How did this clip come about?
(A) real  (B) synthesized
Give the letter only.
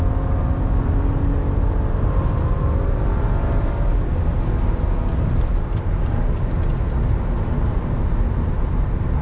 A